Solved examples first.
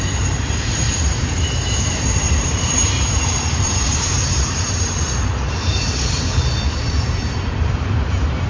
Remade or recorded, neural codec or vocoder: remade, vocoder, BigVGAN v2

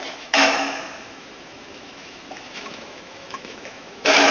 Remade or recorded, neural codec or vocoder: remade, autoencoder, DAC-VAE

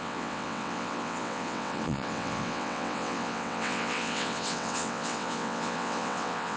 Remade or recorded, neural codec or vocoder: remade, vocoder, WaveNeXt